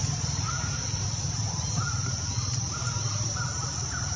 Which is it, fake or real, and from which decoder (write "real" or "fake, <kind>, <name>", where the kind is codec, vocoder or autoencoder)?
fake, vocoder, BigVGAN v2